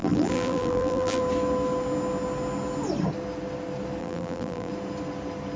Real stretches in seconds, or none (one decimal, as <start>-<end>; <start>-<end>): 1.2-4.0; 4.7-5.6